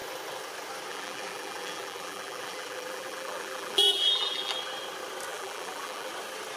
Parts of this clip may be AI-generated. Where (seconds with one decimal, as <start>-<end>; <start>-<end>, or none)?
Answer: 0.9-4.5; 5.3-6.1

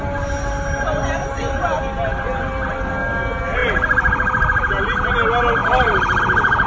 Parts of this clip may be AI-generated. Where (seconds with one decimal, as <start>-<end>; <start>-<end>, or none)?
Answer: 3.6-4.8; 5.6-6.2